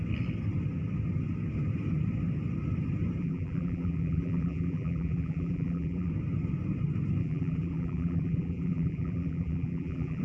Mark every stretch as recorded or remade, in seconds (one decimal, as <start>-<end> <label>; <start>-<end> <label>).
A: 0.0-3.2 recorded; 3.2-6.1 remade; 6.1-7.2 recorded; 7.2-10.2 remade